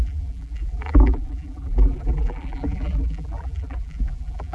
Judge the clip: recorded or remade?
remade